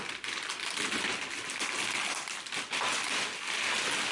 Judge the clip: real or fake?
real